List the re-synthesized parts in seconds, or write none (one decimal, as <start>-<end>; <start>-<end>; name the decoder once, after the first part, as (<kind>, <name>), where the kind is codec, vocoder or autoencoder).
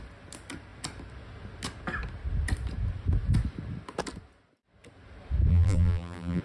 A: 5.5-6.4 (vocoder, BigVGAN v2)